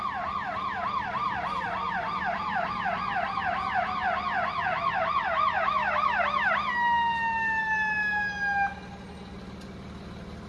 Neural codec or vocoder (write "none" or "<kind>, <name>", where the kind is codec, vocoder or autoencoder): none